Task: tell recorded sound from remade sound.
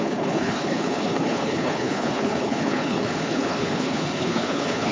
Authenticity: remade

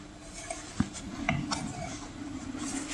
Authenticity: recorded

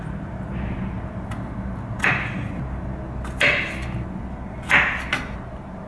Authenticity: recorded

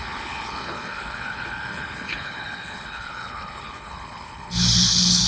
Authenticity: remade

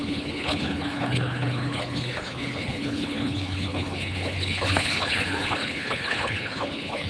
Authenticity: remade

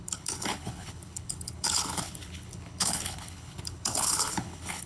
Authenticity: remade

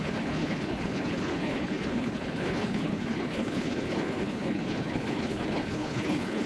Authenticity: remade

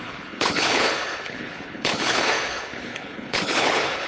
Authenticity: remade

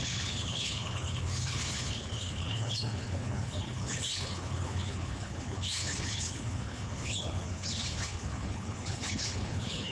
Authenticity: remade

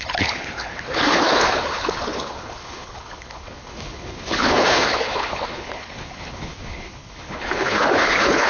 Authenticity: remade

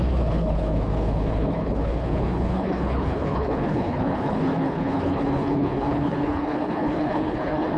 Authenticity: remade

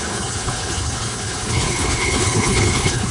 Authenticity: remade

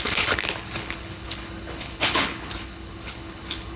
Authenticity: remade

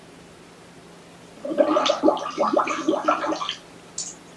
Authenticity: recorded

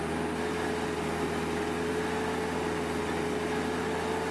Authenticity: recorded